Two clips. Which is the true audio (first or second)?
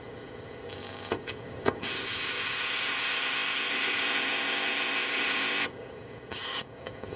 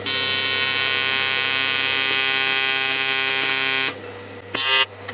second